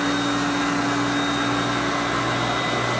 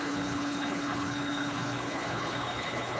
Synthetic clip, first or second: second